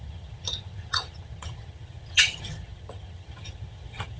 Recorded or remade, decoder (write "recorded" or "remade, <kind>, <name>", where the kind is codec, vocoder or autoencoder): remade, vocoder, HiFi-GAN